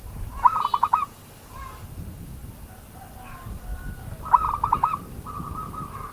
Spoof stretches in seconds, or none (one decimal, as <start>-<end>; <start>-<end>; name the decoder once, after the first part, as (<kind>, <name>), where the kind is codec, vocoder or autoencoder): 2.4-6.1 (vocoder, BigVGAN v2)